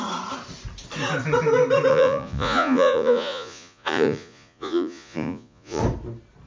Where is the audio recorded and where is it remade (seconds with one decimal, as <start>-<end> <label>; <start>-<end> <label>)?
0.0-1.9 recorded; 1.9-5.8 remade; 5.8-6.5 recorded

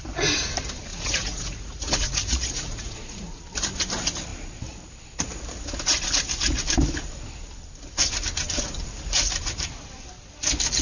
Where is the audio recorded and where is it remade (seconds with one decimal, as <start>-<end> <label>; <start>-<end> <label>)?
0.0-0.9 recorded; 0.9-3.4 remade; 3.4-10.8 recorded